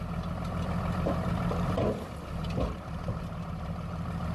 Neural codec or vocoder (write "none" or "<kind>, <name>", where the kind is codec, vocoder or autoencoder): none